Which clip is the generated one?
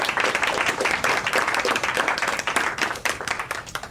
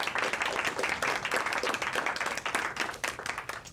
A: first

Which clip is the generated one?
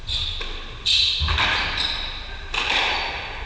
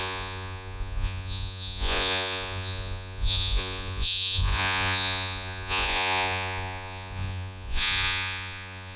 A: second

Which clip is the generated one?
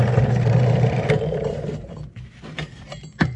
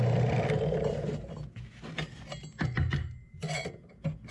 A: first